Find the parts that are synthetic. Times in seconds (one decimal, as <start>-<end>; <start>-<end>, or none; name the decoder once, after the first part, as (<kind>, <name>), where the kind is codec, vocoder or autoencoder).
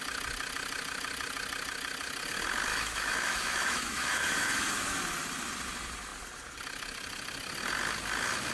2.7-5.0 (autoencoder, DAC-VAE)